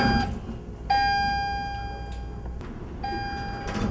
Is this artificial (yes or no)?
no